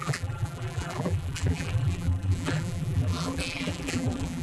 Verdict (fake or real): fake